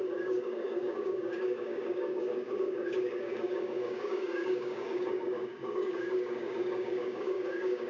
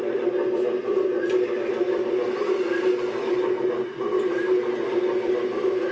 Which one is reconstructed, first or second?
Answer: first